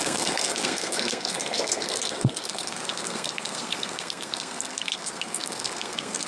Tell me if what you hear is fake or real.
fake